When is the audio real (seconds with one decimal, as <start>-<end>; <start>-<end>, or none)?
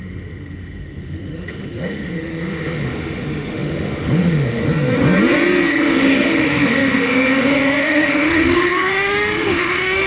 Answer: 4.6-5.7